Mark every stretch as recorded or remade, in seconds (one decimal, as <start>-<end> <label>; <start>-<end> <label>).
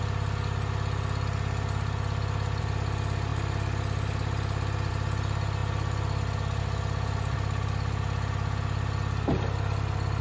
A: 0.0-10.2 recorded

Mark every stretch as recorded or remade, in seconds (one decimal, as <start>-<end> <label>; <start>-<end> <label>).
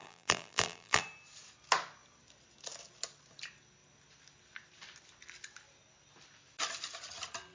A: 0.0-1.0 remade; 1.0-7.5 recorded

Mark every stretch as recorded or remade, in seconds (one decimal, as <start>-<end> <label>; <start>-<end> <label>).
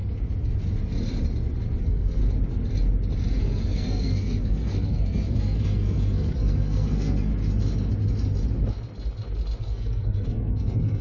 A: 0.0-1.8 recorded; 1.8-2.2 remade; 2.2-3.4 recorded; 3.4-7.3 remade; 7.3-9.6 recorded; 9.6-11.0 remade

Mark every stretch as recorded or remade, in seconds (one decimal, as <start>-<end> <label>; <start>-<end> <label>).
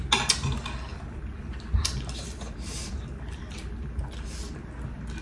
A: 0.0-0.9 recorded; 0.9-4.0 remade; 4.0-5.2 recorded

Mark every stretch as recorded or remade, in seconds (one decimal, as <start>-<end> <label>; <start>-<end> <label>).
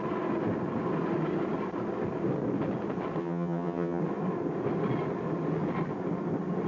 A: 0.0-3.2 recorded; 3.2-4.0 remade; 4.0-6.7 recorded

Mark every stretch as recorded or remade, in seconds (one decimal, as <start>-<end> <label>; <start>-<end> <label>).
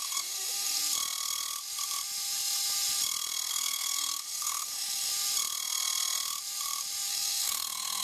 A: 0.0-0.8 remade; 0.8-3.5 recorded; 3.5-5.1 remade; 5.1-7.1 recorded; 7.1-8.0 remade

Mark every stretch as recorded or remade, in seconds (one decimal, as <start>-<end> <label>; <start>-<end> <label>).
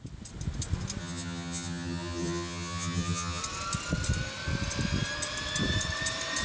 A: 0.0-1.0 recorded; 1.0-3.4 remade; 3.4-6.4 recorded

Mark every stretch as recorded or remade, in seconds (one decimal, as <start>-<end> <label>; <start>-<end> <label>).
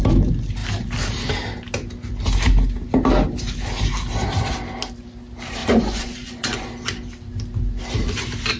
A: 0.0-5.6 recorded; 5.6-6.7 remade; 6.7-8.6 recorded